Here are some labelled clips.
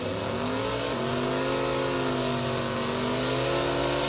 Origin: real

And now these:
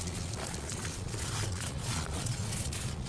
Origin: fake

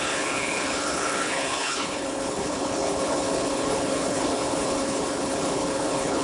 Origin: fake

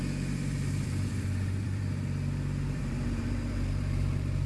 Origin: fake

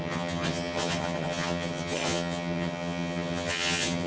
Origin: fake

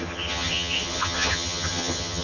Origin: fake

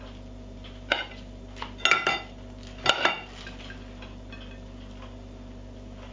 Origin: real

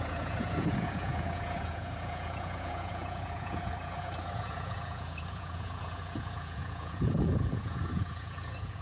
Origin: fake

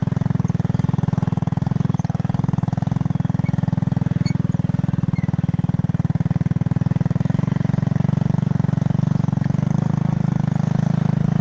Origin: real